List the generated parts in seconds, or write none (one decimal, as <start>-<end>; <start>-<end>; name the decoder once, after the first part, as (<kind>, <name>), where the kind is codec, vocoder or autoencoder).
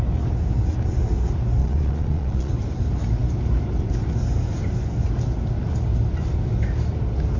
1.6-2.5 (vocoder, Vocos)